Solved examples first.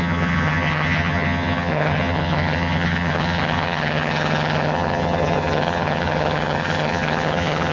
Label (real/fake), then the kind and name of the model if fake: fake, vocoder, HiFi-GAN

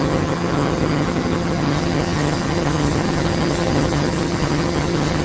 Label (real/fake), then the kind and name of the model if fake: fake, vocoder, HiFi-GAN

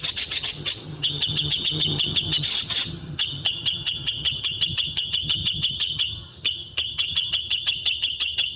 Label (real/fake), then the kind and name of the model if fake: fake, vocoder, HiFi-GAN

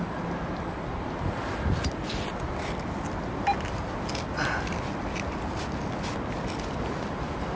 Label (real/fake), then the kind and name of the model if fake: real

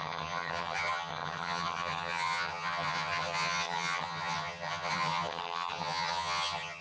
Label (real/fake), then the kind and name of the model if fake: fake, vocoder, HiFi-GAN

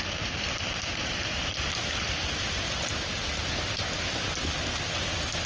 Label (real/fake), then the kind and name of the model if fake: real